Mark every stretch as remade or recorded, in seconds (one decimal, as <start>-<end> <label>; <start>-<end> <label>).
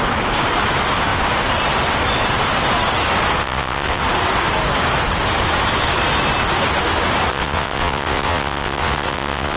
0.0-3.4 recorded; 3.4-4.0 remade; 4.0-7.3 recorded; 7.3-9.6 remade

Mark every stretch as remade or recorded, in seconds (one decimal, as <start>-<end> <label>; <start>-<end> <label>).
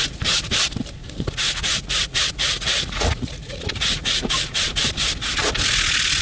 0.0-1.0 recorded; 1.0-4.7 remade; 4.7-6.2 recorded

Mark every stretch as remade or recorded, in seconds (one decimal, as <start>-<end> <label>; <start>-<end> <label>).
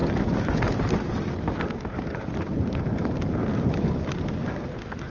0.0-3.1 remade; 3.1-3.5 recorded; 3.5-4.5 remade; 4.5-5.1 recorded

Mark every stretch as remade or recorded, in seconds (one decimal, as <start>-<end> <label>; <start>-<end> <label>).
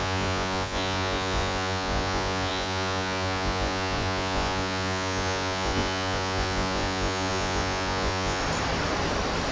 0.0-8.4 remade; 8.4-9.5 recorded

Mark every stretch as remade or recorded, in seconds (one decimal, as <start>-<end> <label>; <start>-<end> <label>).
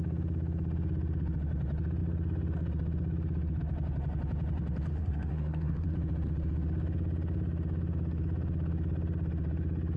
0.0-4.9 recorded; 4.9-5.9 remade; 5.9-10.0 recorded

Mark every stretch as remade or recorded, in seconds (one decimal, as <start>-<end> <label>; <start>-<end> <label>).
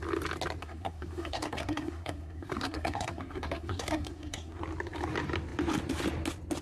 0.0-0.6 recorded; 0.6-4.6 remade; 4.6-6.6 recorded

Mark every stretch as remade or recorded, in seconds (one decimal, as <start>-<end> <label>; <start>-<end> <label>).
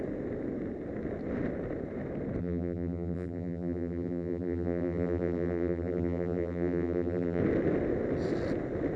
0.0-2.4 recorded; 2.4-7.4 remade; 7.4-9.0 recorded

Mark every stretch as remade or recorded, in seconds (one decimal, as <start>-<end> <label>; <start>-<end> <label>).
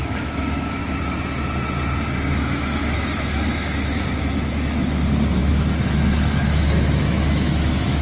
0.0-0.8 remade; 0.8-2.3 recorded; 2.3-8.0 remade